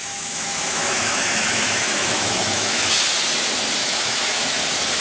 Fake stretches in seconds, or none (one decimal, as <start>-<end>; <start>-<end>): 0.0-3.0; 3.8-4.6